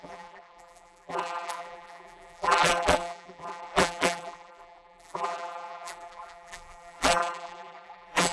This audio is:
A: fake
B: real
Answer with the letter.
A